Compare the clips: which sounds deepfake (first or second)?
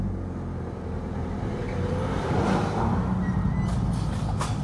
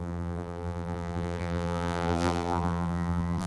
second